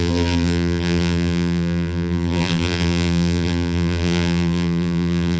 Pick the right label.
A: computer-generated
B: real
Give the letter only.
A